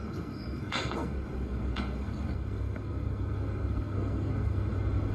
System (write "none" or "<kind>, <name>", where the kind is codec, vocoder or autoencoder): codec, SNAC